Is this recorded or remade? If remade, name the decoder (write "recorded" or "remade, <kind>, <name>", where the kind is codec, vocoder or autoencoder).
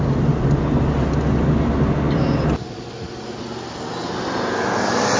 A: recorded